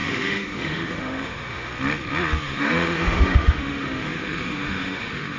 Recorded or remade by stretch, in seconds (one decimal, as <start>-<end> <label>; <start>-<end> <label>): 0.0-1.7 remade; 1.7-2.4 recorded; 2.4-5.4 remade

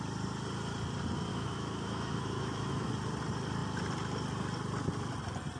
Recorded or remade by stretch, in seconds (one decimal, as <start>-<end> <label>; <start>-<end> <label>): 0.0-1.3 recorded; 1.3-2.9 remade; 2.9-5.6 recorded